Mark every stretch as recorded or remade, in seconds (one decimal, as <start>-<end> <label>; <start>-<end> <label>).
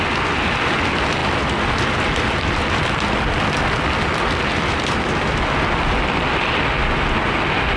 0.0-7.8 recorded